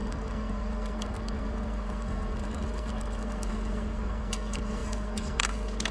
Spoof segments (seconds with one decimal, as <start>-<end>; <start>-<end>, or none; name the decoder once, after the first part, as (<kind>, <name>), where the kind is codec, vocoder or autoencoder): 0.0-5.9 (codec, SNAC)